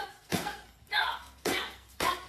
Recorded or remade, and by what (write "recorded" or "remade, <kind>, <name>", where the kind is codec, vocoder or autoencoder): remade, codec, SNAC